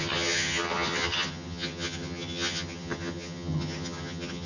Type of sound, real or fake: fake